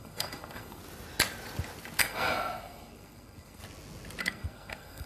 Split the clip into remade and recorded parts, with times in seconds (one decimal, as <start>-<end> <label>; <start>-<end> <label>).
0.0-0.8 remade; 0.8-2.0 recorded; 2.0-3.6 remade; 3.6-4.2 recorded; 4.2-5.1 remade